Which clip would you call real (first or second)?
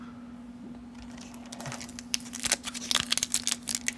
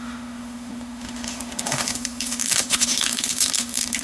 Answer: first